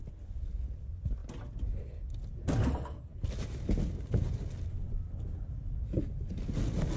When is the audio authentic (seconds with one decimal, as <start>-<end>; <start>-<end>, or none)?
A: 0.0-7.0